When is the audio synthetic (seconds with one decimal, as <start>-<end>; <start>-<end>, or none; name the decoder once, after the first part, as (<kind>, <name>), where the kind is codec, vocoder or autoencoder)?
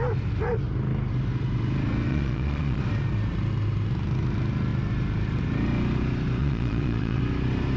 2.1-2.8 (vocoder, Vocos); 6.4-7.2